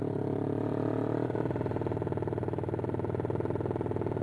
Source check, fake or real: real